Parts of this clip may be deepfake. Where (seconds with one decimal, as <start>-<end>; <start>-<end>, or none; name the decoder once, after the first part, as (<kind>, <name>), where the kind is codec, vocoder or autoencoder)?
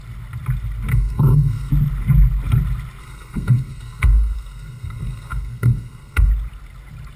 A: 0.9-1.7 (codec, SNAC); 3.0-6.3